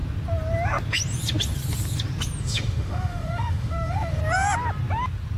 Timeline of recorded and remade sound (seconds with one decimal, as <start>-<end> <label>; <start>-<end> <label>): 0.0-2.4 recorded; 2.4-4.2 remade; 4.2-5.4 recorded